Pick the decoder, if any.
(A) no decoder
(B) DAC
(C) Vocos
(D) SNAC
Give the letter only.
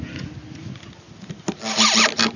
A